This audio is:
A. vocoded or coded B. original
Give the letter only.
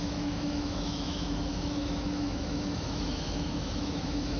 A